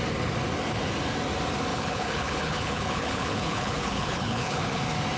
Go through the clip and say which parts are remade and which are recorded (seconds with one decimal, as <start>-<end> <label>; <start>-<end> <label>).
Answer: 0.0-1.7 recorded; 1.7-4.8 remade; 4.8-5.2 recorded